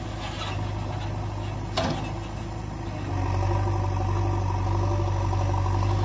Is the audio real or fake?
real